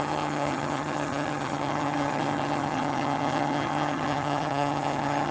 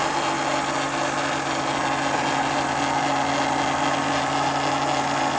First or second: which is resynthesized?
first